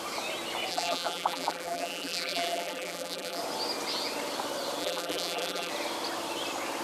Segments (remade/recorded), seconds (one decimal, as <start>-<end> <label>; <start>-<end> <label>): 0.0-0.7 recorded; 0.7-3.4 remade; 3.4-4.8 recorded; 4.8-5.7 remade; 5.7-6.8 recorded